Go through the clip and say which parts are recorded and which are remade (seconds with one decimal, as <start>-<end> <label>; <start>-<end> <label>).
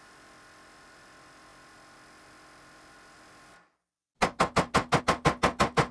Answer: 0.0-5.9 recorded